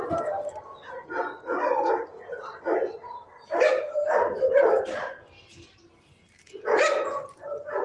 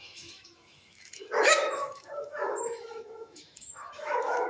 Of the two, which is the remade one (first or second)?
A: second